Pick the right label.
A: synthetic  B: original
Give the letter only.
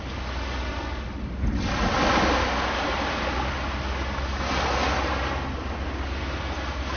B